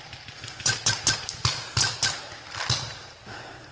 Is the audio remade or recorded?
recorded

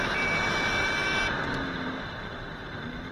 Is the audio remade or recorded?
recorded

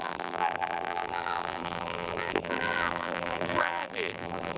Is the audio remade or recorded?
remade